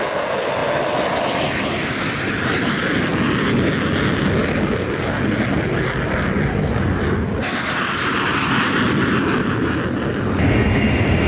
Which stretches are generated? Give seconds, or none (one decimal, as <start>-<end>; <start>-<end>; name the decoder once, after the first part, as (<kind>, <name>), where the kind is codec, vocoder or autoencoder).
none